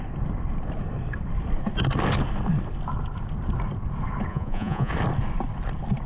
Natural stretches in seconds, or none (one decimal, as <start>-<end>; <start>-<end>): 0.0-4.3; 4.9-6.1